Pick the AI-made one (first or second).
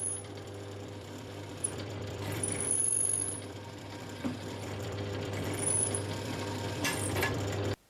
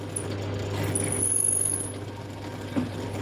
first